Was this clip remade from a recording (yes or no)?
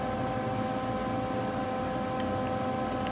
no